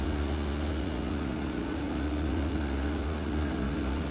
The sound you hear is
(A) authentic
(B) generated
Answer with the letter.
B